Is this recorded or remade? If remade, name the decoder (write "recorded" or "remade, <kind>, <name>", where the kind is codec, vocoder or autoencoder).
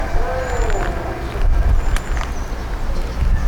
recorded